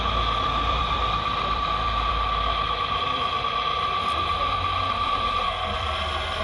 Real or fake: fake